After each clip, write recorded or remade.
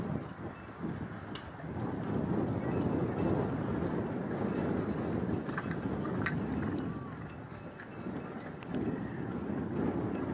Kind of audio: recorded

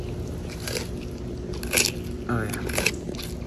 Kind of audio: recorded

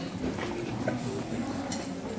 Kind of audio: recorded